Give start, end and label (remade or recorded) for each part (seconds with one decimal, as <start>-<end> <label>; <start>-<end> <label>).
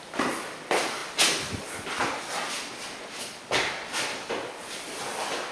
0.0-5.5 recorded